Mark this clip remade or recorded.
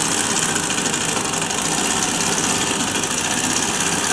recorded